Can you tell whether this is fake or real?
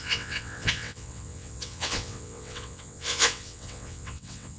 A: fake